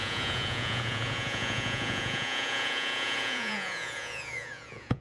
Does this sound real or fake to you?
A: fake